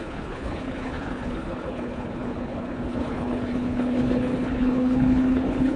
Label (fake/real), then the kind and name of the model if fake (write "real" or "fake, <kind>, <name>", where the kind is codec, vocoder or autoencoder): fake, codec, HILCodec